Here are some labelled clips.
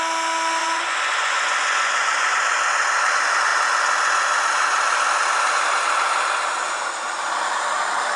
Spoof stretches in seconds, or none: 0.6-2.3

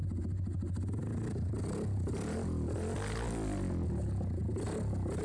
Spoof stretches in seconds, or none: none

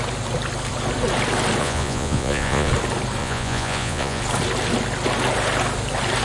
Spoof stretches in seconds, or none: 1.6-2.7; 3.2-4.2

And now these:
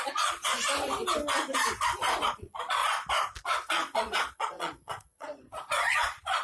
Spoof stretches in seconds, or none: 0.0-0.5; 2.2-2.8; 3.5-6.4

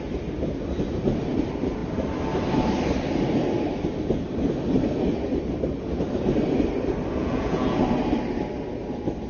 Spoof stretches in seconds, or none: 7.2-7.8

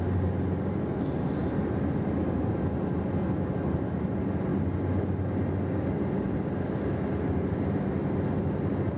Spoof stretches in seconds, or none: none